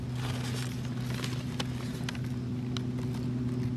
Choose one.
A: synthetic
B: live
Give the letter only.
B